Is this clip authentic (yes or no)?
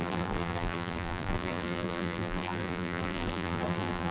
no